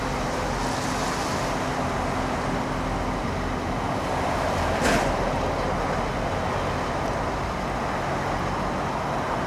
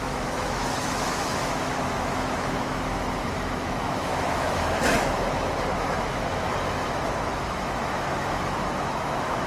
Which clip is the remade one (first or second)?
second